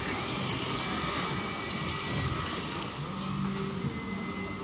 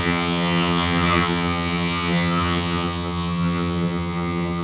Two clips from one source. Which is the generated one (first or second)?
second